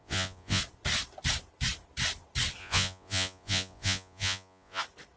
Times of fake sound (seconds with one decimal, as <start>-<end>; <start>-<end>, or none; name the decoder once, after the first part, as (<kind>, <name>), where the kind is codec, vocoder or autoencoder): 0.0-0.6 (vocoder, Vocos); 2.6-4.8